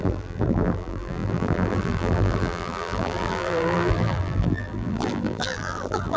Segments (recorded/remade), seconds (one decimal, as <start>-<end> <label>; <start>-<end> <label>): 0.0-6.2 remade